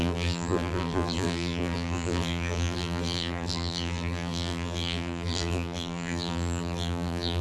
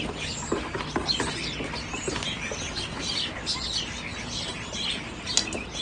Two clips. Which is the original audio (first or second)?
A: second